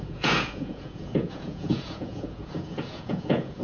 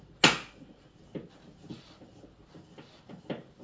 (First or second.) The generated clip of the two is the first